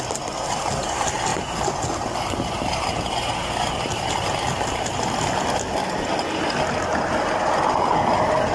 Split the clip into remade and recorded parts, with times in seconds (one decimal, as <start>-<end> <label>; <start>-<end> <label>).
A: 0.0-8.5 recorded